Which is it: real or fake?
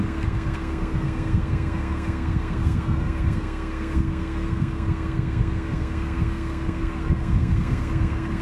fake